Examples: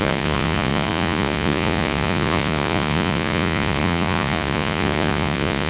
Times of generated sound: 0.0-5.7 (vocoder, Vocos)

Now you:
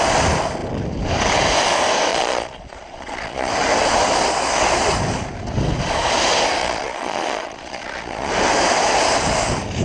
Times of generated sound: 2.1-3.5 (vocoder, Vocos); 6.6-8.3

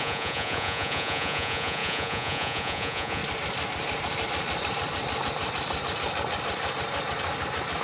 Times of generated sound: 0.0-3.2 (vocoder, Vocos)

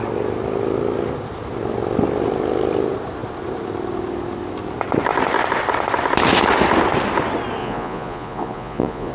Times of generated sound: 7.6-9.1 (vocoder, Vocos)